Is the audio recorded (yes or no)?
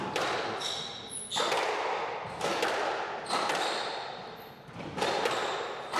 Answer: yes